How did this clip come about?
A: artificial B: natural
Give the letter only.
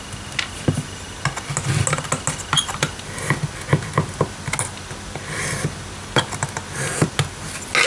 B